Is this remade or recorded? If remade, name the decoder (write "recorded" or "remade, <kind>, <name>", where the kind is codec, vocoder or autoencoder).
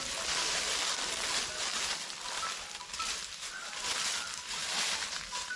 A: recorded